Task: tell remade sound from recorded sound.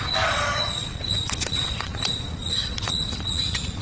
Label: remade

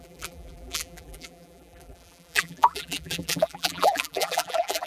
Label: remade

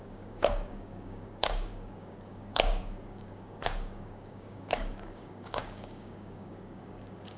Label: remade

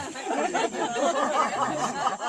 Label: recorded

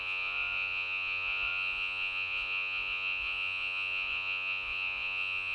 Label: remade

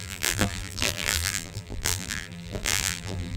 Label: remade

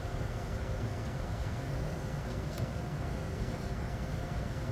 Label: remade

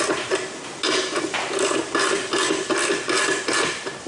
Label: recorded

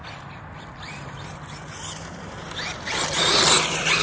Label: remade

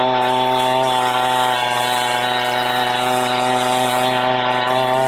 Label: recorded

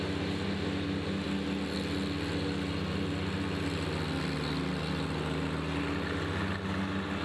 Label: recorded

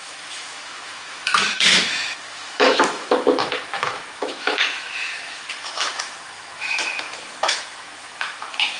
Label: remade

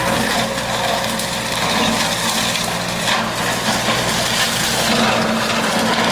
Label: recorded